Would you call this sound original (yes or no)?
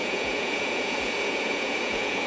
no